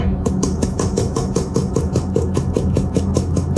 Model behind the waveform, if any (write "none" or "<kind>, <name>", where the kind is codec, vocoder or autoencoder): autoencoder, DAC-VAE